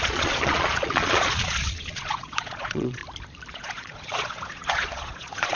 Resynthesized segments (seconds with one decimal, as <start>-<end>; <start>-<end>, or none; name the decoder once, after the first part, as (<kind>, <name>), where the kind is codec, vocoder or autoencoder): 0.0-3.0 (vocoder, Vocos); 3.5-5.6